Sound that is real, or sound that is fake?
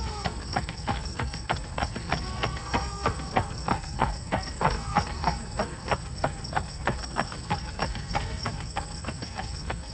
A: fake